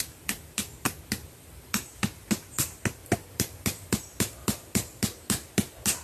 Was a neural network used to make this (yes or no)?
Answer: no